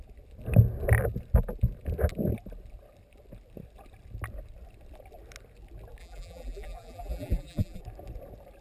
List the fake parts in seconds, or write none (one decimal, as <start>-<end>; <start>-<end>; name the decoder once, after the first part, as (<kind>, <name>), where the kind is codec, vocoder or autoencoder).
6.0-7.8 (vocoder, BigVGAN v2)